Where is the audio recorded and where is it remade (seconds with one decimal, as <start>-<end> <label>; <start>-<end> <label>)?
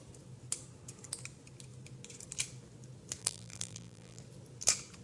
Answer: 0.0-3.2 recorded; 3.2-4.2 remade; 4.2-5.0 recorded